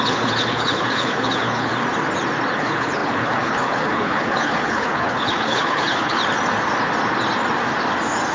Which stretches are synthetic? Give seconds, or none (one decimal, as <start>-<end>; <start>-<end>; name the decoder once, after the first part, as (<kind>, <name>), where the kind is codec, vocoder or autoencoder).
0.0-1.7 (codec, HILCodec); 2.6-6.2